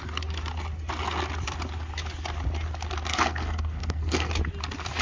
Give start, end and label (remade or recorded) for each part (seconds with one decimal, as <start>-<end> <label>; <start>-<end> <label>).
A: 0.0-3.1 recorded; 3.1-4.3 remade; 4.3-5.0 recorded